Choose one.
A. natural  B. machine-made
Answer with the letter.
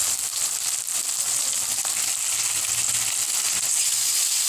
A